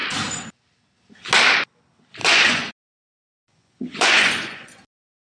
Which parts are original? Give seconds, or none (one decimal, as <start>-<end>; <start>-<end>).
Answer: 0.0-2.2; 2.7-3.5; 4.7-5.2